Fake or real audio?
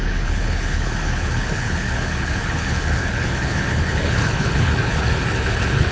fake